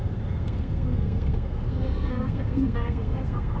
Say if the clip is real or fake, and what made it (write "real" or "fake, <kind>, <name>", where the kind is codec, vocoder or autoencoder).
fake, codec, SNAC